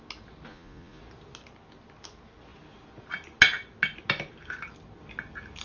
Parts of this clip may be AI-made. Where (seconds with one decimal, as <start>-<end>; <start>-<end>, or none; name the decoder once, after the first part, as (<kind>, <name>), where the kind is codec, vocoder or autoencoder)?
0.5-1.0 (vocoder, Vocos)